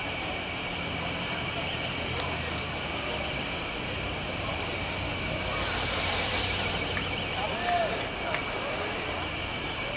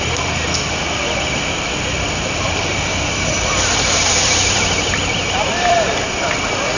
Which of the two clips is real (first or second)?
first